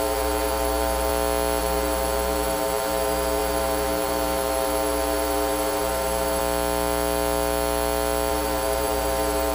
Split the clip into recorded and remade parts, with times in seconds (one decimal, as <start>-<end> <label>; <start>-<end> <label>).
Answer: 0.0-1.1 remade; 1.1-1.6 recorded; 1.6-6.4 remade; 6.4-8.3 recorded; 8.3-9.5 remade